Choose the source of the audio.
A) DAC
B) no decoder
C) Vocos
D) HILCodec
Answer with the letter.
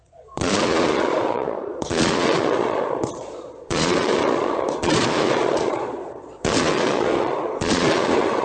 C